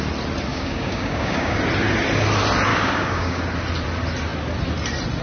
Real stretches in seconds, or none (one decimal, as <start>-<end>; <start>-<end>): 0.0-0.5; 1.6-2.7; 3.4-5.2